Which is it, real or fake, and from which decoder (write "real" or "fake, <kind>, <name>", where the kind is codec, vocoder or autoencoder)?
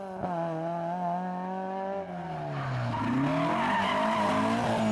real